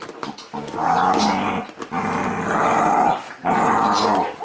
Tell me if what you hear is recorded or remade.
recorded